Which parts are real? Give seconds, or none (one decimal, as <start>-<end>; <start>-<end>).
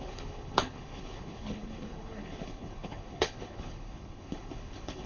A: none